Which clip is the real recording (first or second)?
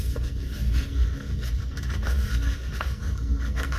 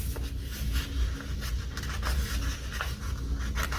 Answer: second